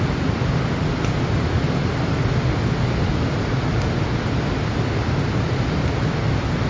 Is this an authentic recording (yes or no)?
yes